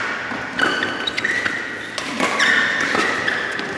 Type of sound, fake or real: real